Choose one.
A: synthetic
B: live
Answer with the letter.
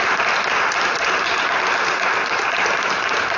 B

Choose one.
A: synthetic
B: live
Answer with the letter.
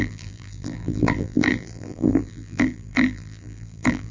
A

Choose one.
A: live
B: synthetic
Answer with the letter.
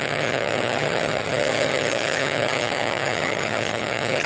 B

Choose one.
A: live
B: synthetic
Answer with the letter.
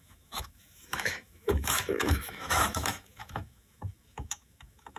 B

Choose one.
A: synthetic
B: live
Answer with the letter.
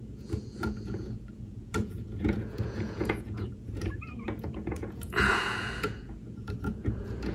A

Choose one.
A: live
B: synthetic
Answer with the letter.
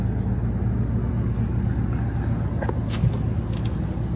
A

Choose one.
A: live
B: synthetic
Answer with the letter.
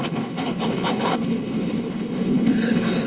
B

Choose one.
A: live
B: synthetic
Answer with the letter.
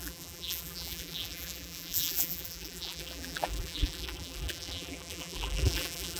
B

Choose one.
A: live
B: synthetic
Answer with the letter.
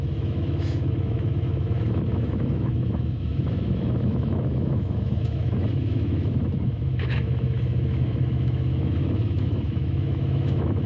B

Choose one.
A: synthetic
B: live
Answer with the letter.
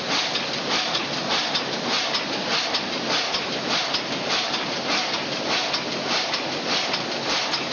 B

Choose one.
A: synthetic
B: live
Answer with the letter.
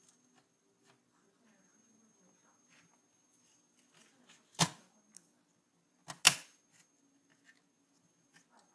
B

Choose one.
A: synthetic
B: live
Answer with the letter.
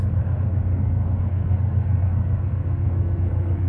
A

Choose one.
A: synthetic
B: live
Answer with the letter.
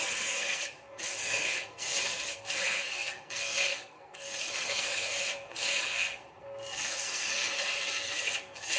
A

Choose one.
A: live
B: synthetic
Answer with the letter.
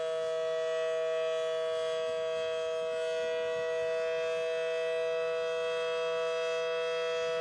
A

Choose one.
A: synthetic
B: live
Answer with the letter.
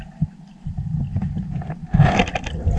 B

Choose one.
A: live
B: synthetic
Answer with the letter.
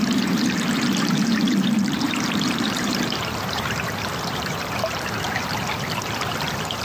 B